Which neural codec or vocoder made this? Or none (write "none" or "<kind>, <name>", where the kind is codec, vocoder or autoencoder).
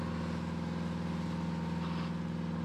none